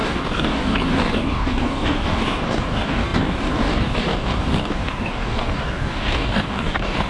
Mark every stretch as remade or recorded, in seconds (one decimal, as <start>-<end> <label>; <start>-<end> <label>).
0.0-7.1 remade